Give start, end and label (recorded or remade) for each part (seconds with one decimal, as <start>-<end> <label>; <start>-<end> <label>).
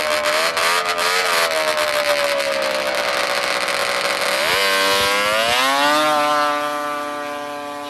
0.0-7.9 recorded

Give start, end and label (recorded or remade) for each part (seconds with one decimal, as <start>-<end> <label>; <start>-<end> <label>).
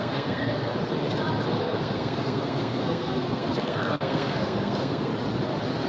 0.0-0.7 remade; 0.7-1.6 recorded; 1.6-5.1 remade; 5.1-5.9 recorded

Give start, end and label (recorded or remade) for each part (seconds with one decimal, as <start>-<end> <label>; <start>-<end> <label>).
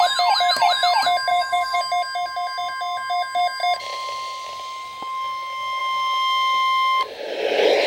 0.0-1.3 recorded; 1.3-1.8 remade; 1.8-7.9 recorded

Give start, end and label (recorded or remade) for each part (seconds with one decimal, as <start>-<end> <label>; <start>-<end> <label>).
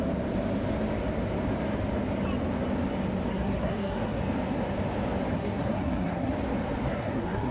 0.0-3.3 recorded; 3.3-4.2 remade; 4.2-5.3 recorded; 5.3-6.3 remade; 6.3-6.8 recorded; 6.8-7.5 remade